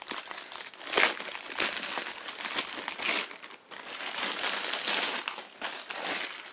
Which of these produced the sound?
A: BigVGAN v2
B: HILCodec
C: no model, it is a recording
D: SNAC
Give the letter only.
C